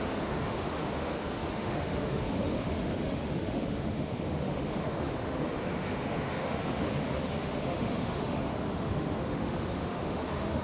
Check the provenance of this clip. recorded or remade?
remade